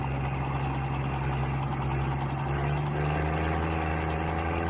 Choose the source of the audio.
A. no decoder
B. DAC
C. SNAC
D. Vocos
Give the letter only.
A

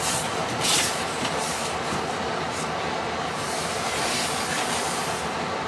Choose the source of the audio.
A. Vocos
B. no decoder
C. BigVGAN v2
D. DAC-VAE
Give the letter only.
C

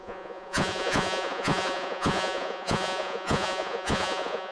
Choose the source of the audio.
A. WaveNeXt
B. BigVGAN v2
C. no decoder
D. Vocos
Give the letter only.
D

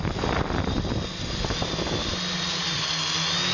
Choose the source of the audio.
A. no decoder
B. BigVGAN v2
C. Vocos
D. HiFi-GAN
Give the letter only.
A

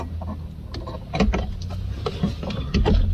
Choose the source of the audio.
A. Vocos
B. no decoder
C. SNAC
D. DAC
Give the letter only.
B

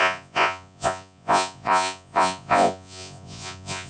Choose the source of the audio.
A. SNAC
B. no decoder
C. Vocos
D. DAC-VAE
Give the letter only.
C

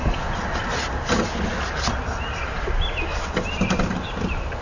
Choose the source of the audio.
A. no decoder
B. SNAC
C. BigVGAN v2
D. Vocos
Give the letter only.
A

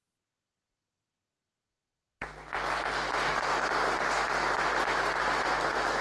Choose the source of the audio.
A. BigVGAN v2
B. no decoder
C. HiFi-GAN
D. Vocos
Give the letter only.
B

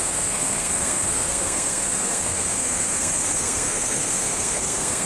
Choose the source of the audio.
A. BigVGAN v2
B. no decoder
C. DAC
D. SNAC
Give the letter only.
D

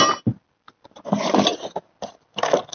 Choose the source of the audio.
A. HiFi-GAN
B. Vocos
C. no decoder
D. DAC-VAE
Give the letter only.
C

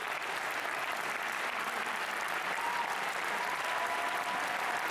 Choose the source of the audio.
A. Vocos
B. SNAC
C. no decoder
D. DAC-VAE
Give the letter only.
C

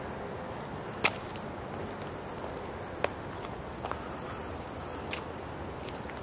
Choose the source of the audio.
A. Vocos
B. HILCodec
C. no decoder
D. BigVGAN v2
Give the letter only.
C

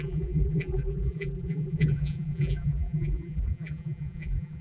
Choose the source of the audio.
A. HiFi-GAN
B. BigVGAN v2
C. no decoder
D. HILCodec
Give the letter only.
B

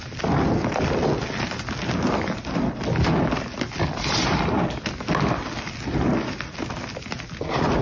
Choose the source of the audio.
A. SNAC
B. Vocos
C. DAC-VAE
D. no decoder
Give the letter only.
D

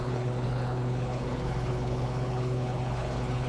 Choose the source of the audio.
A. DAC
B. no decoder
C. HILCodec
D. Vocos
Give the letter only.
C